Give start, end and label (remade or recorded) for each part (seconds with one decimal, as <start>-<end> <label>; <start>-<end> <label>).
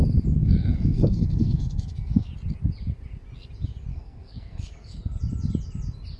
0.0-0.4 recorded; 0.4-2.3 remade; 2.3-3.9 recorded; 3.9-5.2 remade; 5.2-6.2 recorded